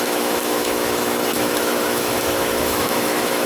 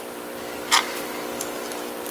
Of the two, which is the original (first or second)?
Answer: second